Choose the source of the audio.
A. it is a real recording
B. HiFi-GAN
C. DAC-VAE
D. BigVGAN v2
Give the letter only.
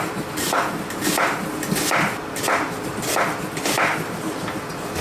A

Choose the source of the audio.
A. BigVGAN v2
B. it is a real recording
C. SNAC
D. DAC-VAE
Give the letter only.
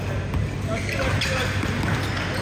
B